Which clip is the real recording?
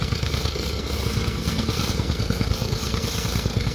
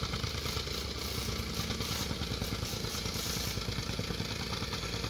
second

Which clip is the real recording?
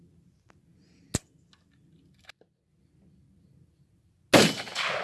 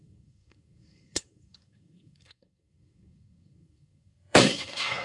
first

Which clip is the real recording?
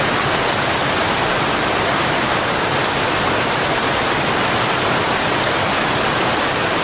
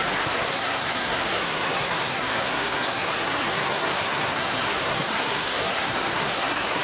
first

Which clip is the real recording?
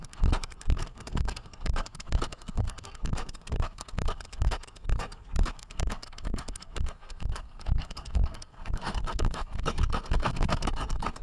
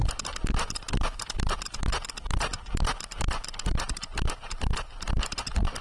second